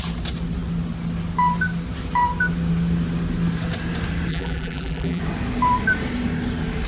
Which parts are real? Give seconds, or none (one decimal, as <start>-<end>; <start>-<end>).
0.0-4.3; 5.2-6.9